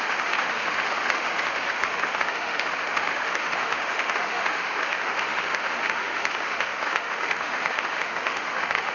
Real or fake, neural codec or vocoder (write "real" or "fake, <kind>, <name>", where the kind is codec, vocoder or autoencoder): fake, autoencoder, DAC-VAE